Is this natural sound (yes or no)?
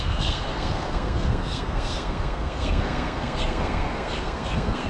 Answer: no